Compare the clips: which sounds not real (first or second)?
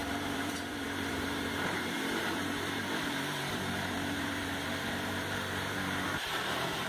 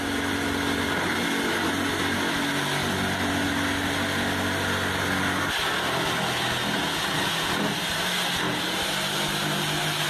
first